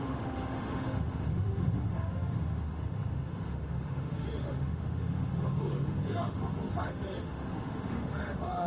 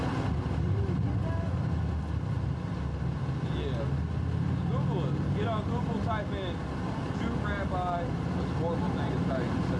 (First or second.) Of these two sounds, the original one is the second